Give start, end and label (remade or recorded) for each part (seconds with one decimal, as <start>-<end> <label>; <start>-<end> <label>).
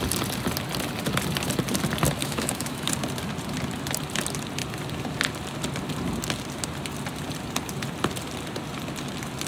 0.0-2.2 recorded; 2.2-2.9 remade; 2.9-9.5 recorded